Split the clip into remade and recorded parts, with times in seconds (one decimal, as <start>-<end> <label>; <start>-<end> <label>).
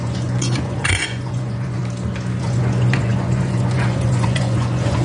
0.0-1.8 remade; 1.8-2.4 recorded; 2.4-5.0 remade